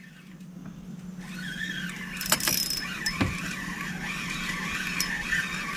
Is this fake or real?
real